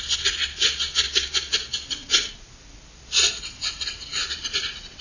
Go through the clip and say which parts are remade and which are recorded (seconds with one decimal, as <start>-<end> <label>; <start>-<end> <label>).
0.0-0.4 recorded; 0.4-3.4 remade; 3.4-4.1 recorded; 4.1-5.0 remade